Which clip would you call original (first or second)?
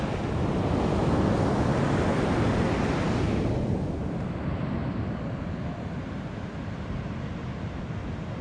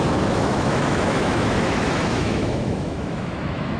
first